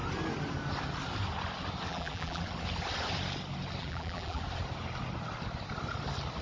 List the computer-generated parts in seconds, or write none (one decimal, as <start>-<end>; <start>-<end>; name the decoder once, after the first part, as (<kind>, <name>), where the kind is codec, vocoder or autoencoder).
1.9-2.4 (vocoder, BigVGAN v2); 3.8-4.4